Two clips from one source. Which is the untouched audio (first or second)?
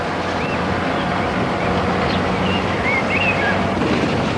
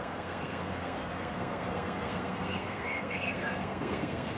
first